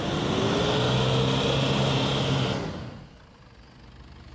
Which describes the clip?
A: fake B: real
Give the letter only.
B